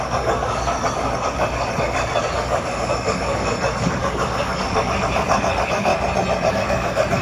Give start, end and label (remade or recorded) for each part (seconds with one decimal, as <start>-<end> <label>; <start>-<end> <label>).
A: 0.0-5.9 remade; 5.9-6.5 recorded; 6.5-7.2 remade